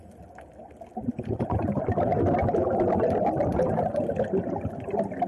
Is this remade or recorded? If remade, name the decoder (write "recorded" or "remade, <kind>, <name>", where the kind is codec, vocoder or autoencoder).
recorded